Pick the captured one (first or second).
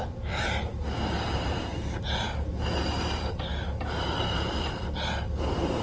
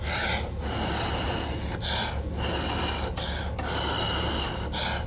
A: second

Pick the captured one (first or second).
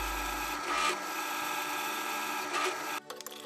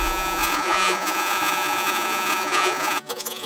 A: first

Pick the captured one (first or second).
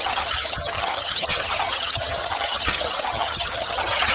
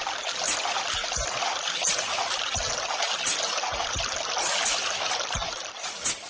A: second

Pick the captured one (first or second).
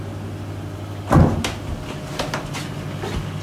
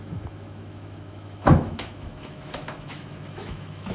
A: first